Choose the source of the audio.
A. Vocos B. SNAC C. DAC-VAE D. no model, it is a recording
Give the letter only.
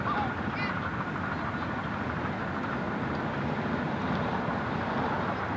D